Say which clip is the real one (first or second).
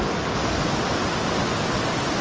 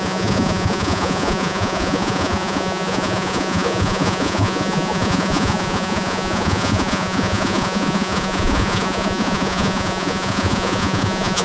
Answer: first